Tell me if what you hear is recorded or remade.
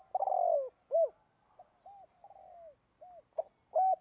recorded